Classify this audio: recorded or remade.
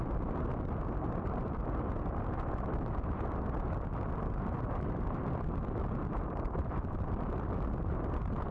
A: remade